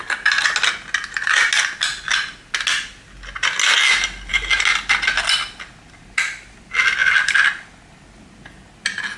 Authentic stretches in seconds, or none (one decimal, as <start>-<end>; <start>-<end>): 0.0-9.2